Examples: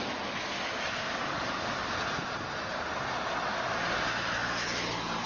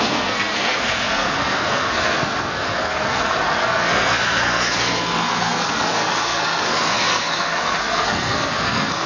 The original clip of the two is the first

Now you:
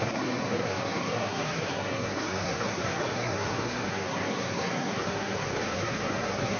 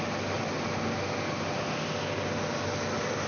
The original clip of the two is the second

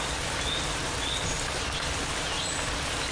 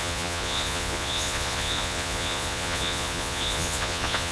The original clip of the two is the first